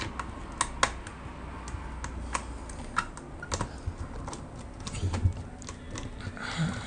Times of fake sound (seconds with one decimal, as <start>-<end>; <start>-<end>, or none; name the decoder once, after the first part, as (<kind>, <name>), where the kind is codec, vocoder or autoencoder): none